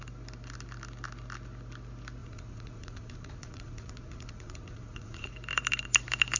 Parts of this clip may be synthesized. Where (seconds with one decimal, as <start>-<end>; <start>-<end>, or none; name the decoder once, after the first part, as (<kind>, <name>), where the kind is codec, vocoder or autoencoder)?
2.2-5.3 (vocoder, Vocos)